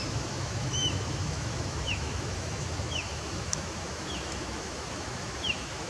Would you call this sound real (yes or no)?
no